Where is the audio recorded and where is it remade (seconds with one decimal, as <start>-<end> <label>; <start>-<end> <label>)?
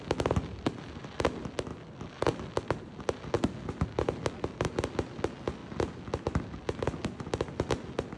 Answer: 0.0-8.2 recorded